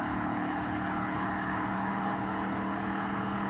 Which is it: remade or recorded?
remade